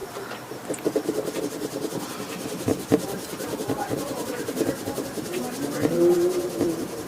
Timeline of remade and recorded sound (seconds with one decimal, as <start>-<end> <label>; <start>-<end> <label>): 0.0-1.4 recorded; 1.4-7.1 remade